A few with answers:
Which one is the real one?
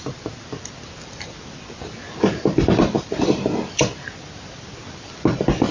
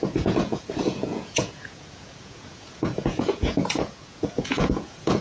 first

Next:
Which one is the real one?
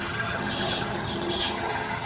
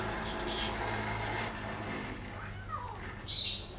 second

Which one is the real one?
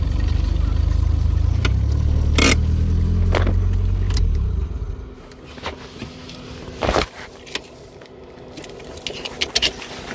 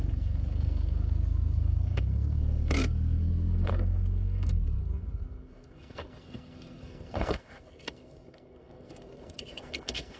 first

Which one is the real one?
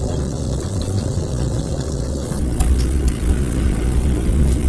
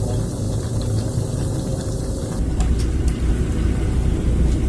second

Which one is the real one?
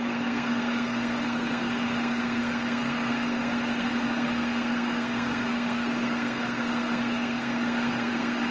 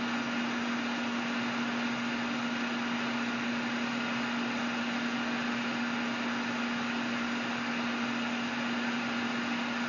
second